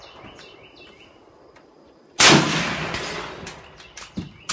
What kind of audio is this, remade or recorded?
recorded